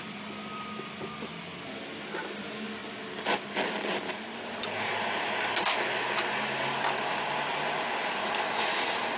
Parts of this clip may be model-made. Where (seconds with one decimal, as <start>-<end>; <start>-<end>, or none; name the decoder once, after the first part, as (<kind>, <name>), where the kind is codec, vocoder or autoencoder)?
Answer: none